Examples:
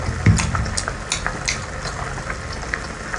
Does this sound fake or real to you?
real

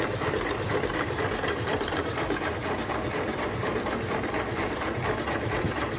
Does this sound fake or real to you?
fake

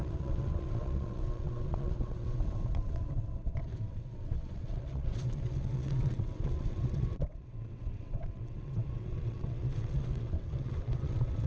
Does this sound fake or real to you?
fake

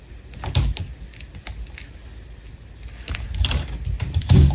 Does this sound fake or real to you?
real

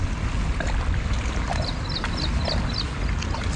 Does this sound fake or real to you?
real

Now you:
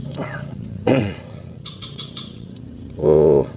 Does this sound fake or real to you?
fake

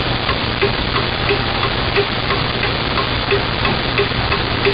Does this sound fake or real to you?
real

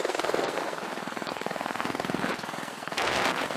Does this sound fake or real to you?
fake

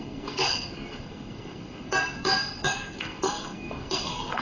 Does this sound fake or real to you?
fake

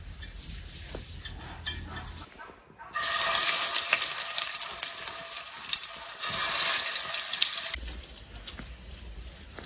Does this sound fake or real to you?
real